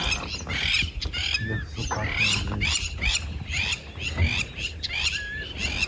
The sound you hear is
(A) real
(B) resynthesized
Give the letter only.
A